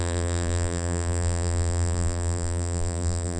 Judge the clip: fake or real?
fake